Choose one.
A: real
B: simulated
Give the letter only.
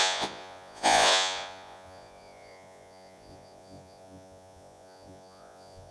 B